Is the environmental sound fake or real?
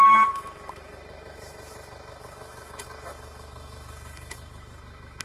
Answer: fake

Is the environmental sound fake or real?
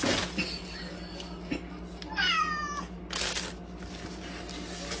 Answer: real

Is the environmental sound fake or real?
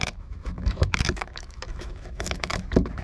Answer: fake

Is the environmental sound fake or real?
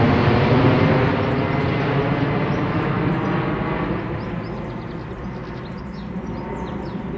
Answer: real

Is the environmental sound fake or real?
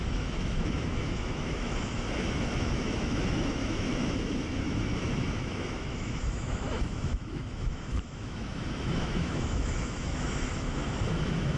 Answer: fake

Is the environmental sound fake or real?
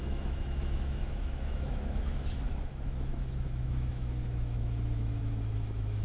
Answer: fake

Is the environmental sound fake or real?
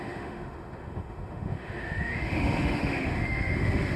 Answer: fake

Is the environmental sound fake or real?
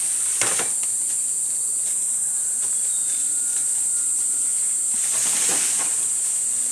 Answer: real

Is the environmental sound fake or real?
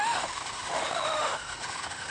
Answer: fake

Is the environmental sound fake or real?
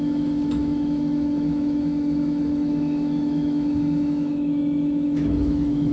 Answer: fake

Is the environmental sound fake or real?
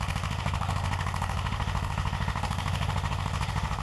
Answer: fake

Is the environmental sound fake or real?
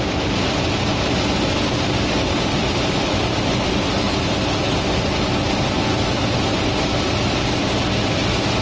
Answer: real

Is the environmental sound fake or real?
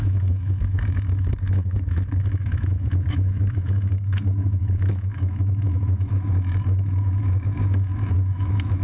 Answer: fake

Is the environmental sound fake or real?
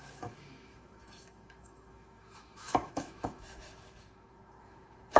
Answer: fake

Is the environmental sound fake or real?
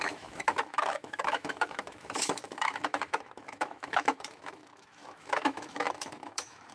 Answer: fake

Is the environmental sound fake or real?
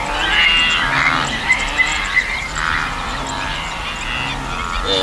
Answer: real